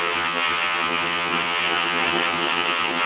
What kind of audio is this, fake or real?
fake